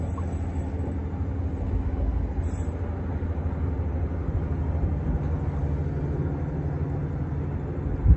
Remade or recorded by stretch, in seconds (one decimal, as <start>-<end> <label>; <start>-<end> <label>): 0.0-8.2 recorded